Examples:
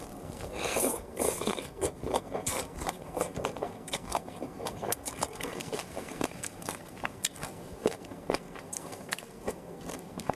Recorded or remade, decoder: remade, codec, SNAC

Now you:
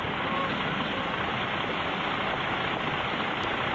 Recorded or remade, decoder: recorded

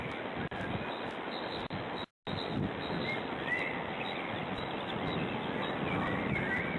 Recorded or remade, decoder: recorded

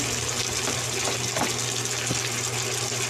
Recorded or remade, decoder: recorded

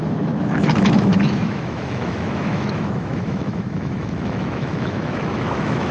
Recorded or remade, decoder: remade, autoencoder, DAC-VAE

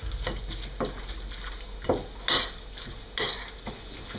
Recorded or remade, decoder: recorded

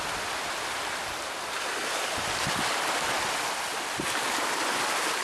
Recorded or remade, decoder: recorded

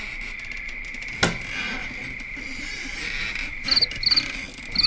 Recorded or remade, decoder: recorded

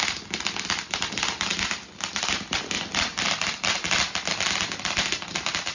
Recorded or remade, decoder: recorded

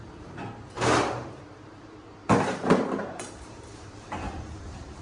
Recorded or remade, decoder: remade, vocoder, BigVGAN v2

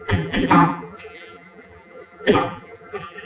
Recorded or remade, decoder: remade, vocoder, BigVGAN v2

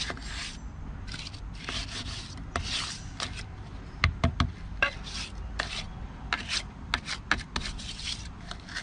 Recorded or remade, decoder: recorded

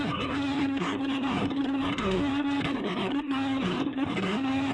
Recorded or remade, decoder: remade, codec, SNAC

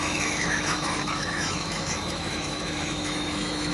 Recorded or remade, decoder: remade, autoencoder, DAC-VAE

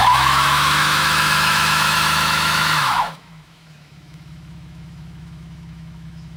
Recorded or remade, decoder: remade, autoencoder, DAC-VAE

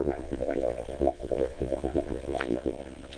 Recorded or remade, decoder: remade, vocoder, Vocos